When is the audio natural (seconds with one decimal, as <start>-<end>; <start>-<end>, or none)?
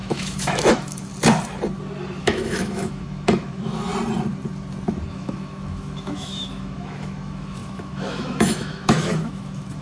1.1-2.2; 3.9-5.1